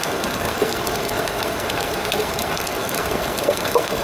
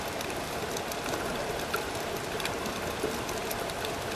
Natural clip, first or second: second